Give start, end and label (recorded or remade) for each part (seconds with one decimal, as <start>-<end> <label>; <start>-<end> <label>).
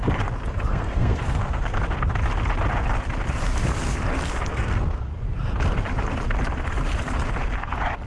0.0-0.7 recorded; 0.7-1.8 remade; 1.8-4.5 recorded; 4.5-5.1 remade; 5.1-8.1 recorded